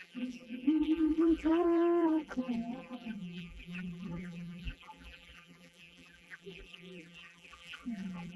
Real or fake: fake